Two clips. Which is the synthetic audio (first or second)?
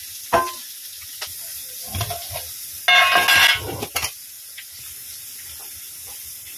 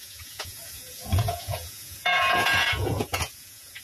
second